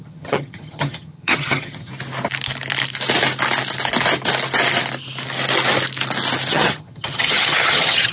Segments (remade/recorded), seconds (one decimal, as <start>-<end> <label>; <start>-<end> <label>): 0.0-1.9 remade; 1.9-6.5 recorded; 6.5-8.1 remade